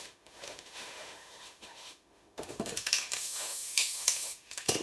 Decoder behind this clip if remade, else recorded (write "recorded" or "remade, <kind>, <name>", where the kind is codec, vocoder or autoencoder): remade, autoencoder, DAC-VAE